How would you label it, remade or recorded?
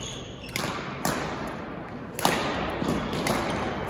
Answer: recorded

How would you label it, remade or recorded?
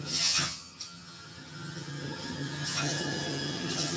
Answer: remade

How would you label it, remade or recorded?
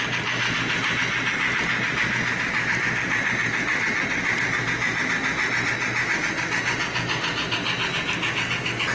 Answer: recorded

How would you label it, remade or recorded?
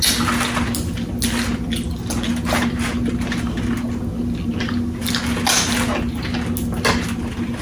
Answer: recorded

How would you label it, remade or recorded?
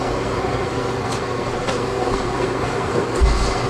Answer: remade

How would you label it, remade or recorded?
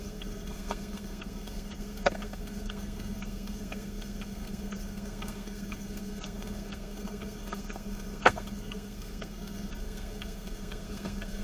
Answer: remade